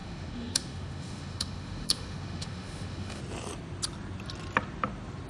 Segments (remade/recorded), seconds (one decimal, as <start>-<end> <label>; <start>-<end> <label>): 0.0-3.2 remade; 3.2-5.3 recorded